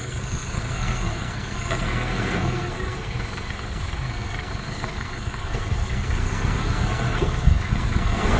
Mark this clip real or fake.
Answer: fake